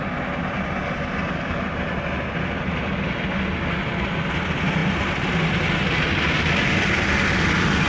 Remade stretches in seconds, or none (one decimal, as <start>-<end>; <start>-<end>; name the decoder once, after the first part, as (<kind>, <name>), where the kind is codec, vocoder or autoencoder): none